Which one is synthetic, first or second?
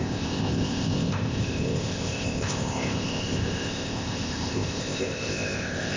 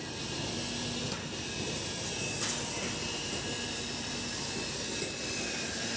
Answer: first